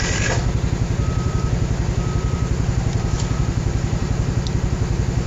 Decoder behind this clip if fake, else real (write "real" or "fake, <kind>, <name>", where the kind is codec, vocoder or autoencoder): fake, vocoder, BigVGAN v2